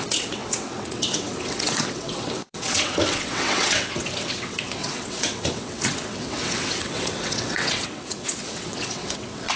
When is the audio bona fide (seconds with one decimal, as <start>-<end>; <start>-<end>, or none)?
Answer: none